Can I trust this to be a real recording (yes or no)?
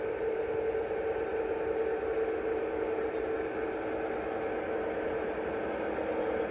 yes